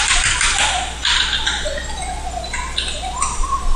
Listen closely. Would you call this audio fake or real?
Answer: real